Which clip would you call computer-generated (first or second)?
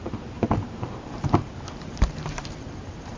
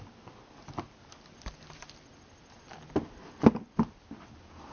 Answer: first